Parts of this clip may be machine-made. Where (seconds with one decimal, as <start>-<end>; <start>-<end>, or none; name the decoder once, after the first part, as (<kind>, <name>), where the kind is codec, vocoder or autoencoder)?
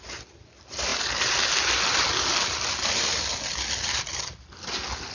none